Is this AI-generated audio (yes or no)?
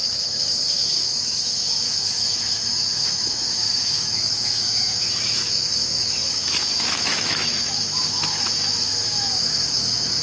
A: yes